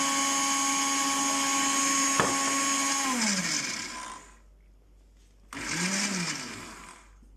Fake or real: real